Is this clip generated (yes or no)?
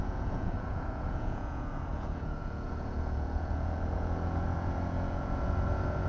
yes